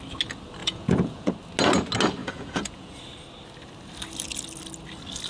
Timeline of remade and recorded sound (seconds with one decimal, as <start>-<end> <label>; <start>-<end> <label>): 0.0-0.6 recorded; 0.6-1.3 remade; 1.3-2.2 recorded; 2.2-2.9 remade; 2.9-5.3 recorded

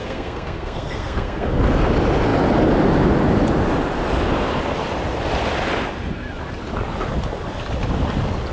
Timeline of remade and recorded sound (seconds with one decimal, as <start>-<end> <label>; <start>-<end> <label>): 0.0-1.6 remade; 1.6-8.5 recorded